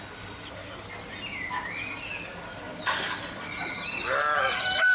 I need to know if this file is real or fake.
real